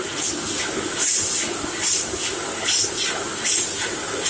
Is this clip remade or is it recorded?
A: recorded